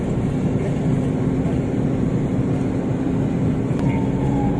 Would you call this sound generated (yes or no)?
no